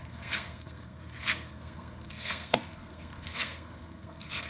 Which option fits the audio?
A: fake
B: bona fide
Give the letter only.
A